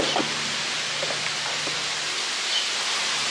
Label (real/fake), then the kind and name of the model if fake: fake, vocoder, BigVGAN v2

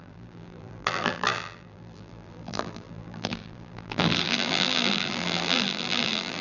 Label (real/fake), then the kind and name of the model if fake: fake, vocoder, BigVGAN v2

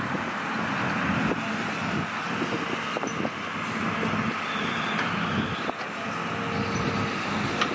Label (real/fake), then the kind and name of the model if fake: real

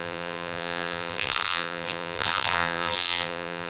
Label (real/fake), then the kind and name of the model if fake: fake, vocoder, BigVGAN v2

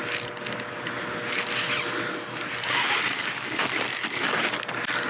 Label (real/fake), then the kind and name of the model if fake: real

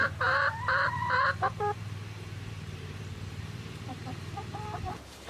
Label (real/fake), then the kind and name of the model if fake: fake, vocoder, BigVGAN v2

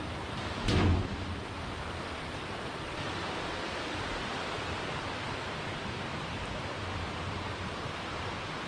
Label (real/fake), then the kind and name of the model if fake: fake, vocoder, BigVGAN v2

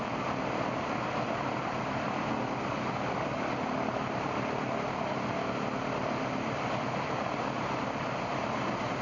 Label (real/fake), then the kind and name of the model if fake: real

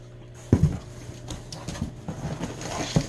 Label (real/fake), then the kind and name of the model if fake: real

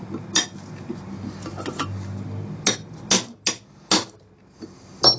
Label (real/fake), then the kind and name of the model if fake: real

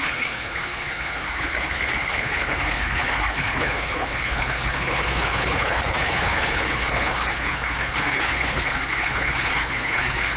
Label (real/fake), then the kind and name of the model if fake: fake, codec, HILCodec